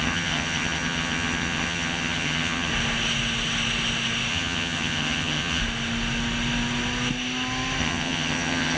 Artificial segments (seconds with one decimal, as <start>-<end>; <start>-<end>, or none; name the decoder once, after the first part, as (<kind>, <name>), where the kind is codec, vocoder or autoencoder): 0.0-2.7 (vocoder, HiFi-GAN); 4.3-5.6; 7.8-8.8